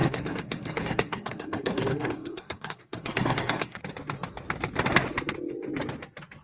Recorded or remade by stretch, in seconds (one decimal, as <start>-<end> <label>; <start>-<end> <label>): 0.0-3.8 remade; 3.8-6.4 recorded